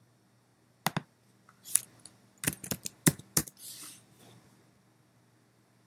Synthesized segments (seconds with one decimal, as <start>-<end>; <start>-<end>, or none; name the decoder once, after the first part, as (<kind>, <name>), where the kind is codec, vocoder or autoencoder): none